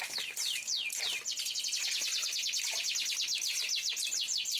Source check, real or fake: real